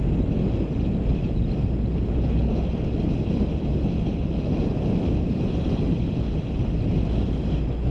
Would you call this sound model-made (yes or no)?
no